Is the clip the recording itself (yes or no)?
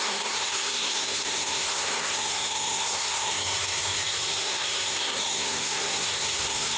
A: no